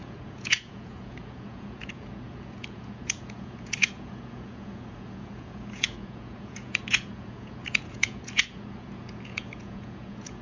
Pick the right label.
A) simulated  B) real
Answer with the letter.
A